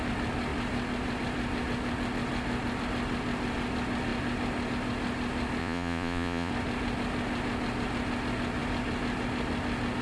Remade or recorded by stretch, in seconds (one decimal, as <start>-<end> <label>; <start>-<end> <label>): 0.0-5.6 recorded; 5.6-6.5 remade; 6.5-10.0 recorded